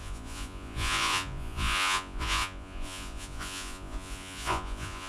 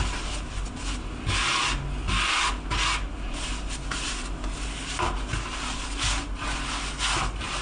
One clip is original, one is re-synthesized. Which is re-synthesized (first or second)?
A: first